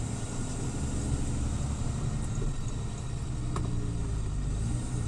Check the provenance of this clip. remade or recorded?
recorded